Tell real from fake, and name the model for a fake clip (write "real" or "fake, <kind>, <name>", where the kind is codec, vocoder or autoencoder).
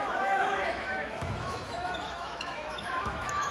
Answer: fake, autoencoder, DAC-VAE